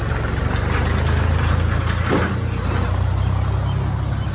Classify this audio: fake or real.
real